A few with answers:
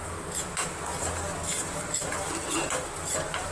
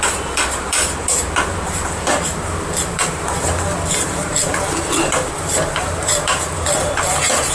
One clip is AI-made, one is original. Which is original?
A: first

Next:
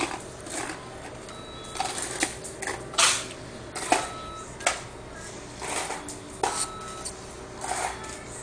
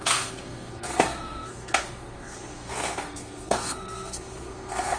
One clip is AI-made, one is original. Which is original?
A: first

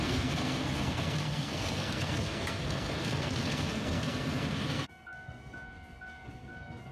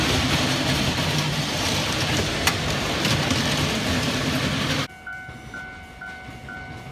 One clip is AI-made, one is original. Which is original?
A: second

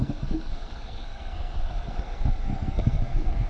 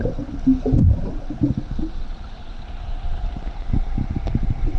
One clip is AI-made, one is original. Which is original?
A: second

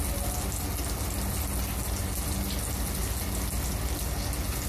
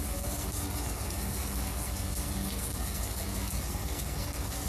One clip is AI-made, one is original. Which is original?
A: first